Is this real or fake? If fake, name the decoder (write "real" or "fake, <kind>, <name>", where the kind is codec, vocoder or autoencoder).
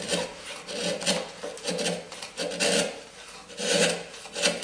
real